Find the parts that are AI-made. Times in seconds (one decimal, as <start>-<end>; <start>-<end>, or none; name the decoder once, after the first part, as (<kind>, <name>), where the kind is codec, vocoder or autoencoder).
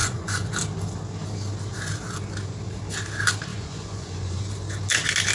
0.0-0.5 (vocoder, Vocos); 3.5-4.4